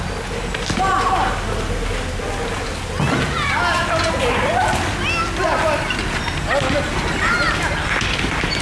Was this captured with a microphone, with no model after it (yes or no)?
yes